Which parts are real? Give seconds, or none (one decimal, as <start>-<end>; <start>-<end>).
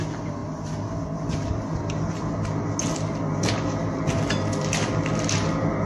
0.0-5.9